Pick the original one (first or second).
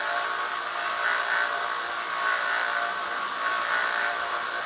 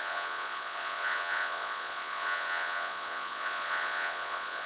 first